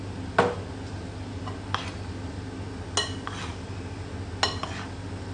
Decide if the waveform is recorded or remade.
recorded